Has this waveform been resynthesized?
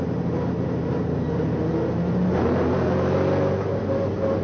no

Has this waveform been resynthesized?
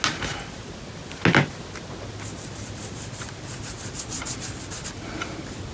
no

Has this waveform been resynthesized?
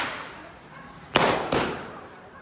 yes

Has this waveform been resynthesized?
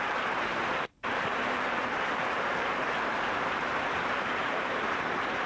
yes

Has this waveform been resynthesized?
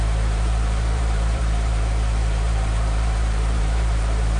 yes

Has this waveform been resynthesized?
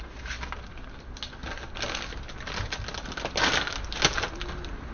no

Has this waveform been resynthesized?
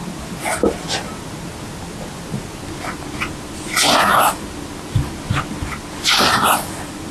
no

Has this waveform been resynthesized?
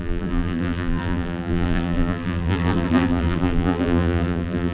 yes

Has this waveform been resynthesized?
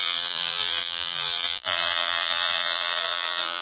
yes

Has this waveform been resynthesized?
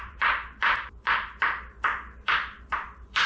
yes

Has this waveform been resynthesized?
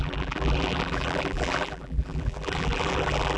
yes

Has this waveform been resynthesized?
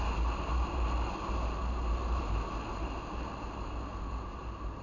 yes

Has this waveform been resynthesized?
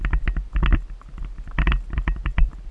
no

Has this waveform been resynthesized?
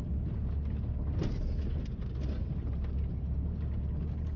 no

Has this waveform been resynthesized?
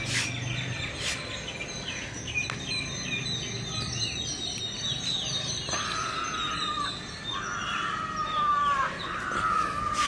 no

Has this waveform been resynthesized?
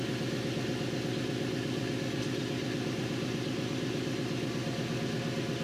no